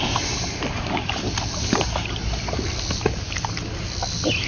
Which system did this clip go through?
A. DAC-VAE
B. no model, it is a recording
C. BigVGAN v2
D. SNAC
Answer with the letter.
B